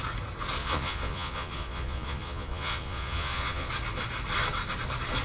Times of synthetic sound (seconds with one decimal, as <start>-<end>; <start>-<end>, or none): 0.6-3.7